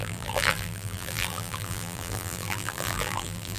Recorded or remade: remade